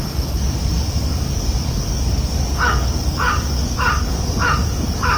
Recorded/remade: remade